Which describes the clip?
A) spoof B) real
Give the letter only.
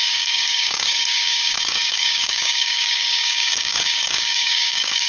A